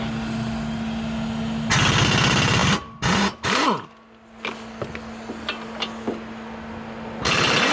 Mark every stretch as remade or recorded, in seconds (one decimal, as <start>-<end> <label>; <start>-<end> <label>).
0.0-7.7 recorded